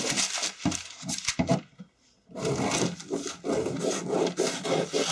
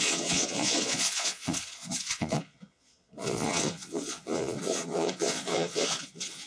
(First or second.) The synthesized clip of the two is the second